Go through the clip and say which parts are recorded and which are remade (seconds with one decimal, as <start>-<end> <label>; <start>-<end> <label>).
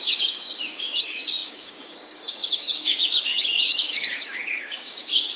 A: 0.0-5.4 remade